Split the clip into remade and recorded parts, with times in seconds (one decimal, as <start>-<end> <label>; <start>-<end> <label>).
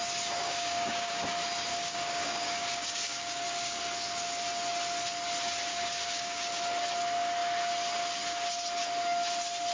0.0-0.4 recorded; 0.4-1.1 remade; 1.1-1.7 recorded; 1.7-3.8 remade; 3.8-5.7 recorded; 5.7-6.6 remade; 6.6-9.7 recorded